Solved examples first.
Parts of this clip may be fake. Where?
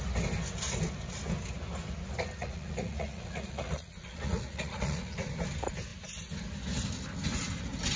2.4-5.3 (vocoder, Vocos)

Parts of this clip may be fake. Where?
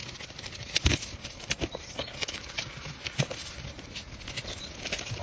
none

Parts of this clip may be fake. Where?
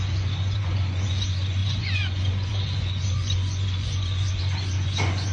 0.0-5.3 (vocoder, Vocos)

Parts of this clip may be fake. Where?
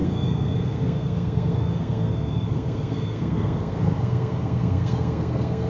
0.0-5.7 (codec, SNAC)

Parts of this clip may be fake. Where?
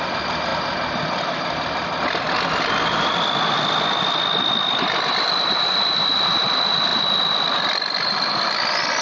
none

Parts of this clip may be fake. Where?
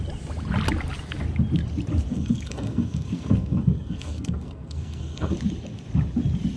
2.1-5.3 (codec, SNAC)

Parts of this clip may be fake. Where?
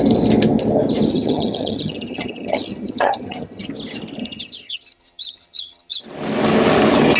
1.1-3.7 (vocoder, HiFi-GAN); 4.2-6.0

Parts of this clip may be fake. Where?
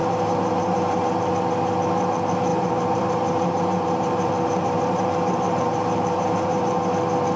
0.0-1.3 (vocoder, BigVGAN v2); 2.5-6.9